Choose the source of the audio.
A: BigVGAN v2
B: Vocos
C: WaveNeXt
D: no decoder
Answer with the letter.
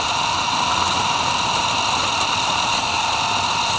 D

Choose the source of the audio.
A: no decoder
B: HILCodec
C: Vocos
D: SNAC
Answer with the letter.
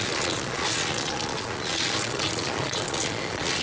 C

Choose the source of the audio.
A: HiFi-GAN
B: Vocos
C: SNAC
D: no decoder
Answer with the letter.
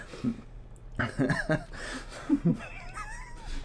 D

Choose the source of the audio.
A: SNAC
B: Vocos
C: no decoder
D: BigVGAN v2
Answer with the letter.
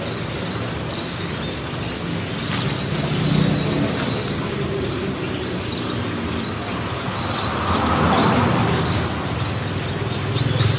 C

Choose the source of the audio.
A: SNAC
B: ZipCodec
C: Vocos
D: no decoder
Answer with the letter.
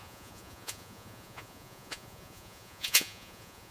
C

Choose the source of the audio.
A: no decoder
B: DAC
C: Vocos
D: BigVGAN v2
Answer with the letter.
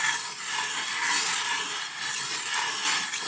A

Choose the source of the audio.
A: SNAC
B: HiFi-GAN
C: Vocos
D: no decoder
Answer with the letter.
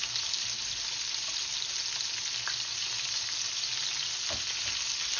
D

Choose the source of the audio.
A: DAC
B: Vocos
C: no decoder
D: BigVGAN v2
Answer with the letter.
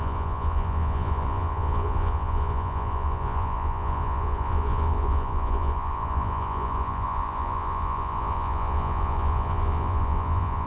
B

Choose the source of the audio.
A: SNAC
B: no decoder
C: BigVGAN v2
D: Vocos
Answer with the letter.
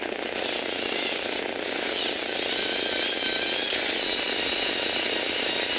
B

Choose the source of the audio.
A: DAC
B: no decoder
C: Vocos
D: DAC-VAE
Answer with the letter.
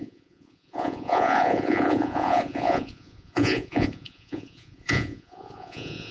C